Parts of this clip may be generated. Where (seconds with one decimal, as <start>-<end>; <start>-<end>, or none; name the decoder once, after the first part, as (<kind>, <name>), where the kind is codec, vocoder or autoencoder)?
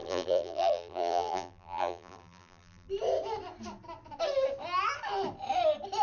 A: 0.0-2.9 (vocoder, BigVGAN v2)